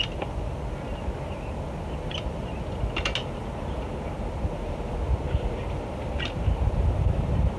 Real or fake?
real